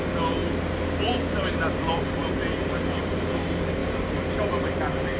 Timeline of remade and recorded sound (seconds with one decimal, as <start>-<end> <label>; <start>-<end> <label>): 0.0-5.2 recorded